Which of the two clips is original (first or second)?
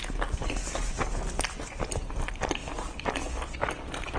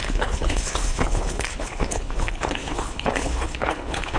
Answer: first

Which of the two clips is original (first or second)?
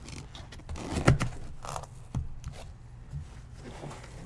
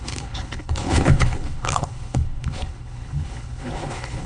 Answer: first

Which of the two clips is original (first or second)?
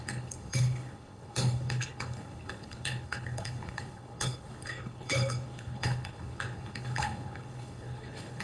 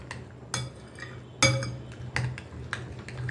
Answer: second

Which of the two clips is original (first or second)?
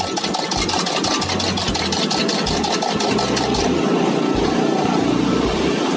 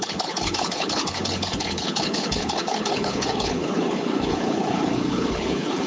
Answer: first